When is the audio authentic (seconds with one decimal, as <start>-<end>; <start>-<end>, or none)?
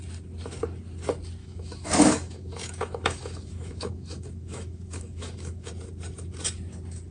0.0-1.4; 5.7-7.1